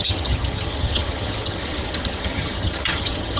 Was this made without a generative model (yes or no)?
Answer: no